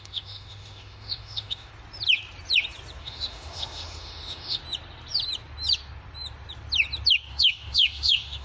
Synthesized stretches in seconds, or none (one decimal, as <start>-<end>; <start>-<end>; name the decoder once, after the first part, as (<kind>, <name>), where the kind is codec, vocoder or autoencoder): 0.0-1.7 (autoencoder, DAC-VAE); 3.0-4.6; 7.3-8.4